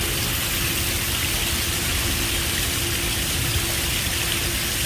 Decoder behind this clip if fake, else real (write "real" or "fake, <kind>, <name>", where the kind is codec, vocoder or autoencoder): real